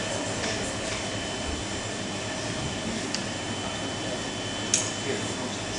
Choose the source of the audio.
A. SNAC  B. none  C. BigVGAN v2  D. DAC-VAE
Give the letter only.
B